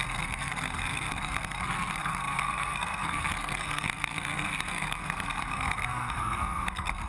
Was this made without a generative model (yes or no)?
no